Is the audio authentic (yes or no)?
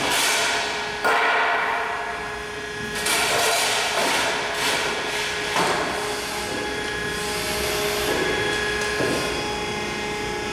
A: yes